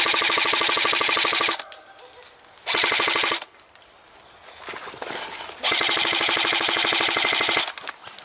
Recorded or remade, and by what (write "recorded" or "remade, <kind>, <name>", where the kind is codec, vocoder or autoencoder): recorded